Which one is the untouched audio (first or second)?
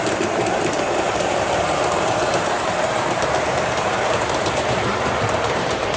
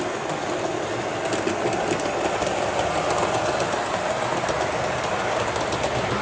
second